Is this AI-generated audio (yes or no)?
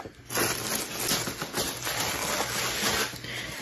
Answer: no